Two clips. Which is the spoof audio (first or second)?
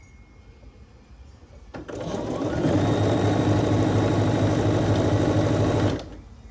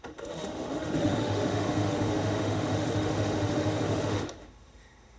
second